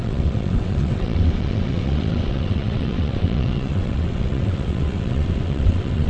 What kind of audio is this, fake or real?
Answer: fake